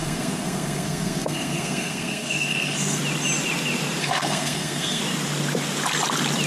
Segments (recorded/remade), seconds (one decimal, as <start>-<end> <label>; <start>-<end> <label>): 0.0-3.0 remade; 3.0-4.0 recorded; 4.0-5.0 remade; 5.0-6.5 recorded